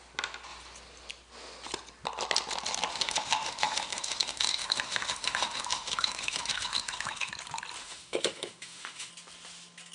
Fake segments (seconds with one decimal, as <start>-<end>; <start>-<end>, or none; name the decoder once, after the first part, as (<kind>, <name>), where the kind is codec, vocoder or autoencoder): 2.9-7.3 (autoencoder, DAC-VAE); 7.8-9.1